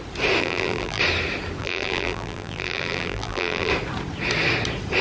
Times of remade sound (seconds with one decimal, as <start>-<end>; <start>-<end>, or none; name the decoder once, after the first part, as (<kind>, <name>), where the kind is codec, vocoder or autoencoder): 0.4-1.0 (vocoder, BigVGAN v2); 1.6-3.7